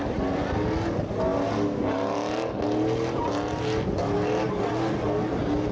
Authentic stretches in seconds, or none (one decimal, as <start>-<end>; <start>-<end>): 0.0-5.7